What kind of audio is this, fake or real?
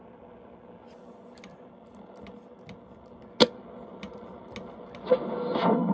real